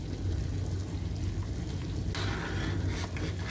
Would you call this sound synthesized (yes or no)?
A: no